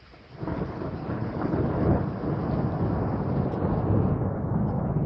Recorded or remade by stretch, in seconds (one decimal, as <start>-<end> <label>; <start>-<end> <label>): 0.0-0.5 recorded; 0.5-2.0 remade; 2.0-5.1 recorded